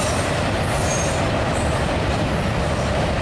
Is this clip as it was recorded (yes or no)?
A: yes